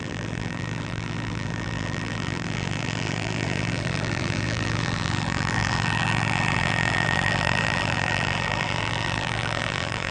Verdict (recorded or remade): remade